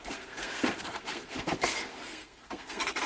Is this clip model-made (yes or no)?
yes